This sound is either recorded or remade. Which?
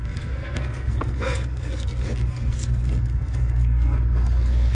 remade